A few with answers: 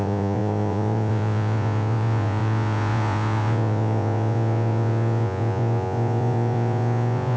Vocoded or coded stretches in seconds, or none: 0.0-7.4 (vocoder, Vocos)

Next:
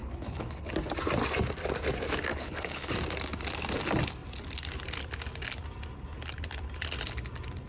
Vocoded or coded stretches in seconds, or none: 0.0-0.7 (codec, HILCodec); 2.3-2.9

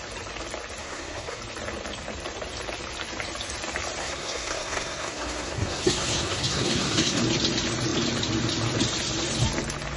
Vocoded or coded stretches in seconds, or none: 0.8-1.4 (codec, SNAC); 4.0-7.2

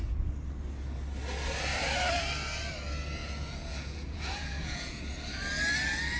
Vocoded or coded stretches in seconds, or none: 3.2-5.0 (vocoder, Vocos)

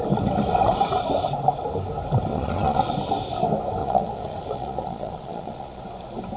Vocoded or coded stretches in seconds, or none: 2.3-2.9 (vocoder, Vocos); 3.8-5.8

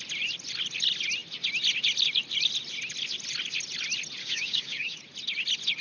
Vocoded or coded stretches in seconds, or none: 4.2-5.0 (codec, DAC)